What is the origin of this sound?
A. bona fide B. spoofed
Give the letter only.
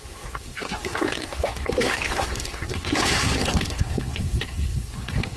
B